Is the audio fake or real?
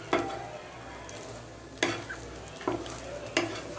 real